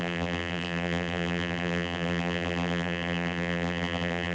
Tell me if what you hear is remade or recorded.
remade